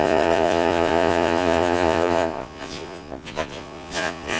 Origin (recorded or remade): remade